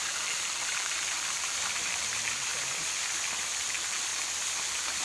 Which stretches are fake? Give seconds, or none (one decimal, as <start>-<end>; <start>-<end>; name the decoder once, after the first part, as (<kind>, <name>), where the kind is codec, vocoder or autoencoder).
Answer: 0.0-2.5 (vocoder, BigVGAN v2); 3.6-4.1